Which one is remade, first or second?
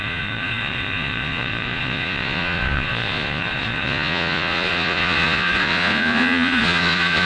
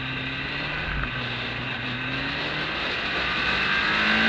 first